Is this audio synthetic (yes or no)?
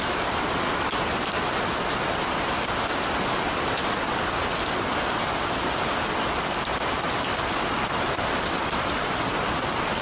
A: no